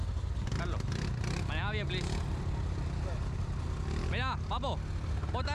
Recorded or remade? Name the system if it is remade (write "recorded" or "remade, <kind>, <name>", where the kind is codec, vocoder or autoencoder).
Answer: recorded